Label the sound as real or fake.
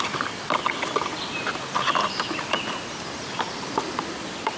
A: real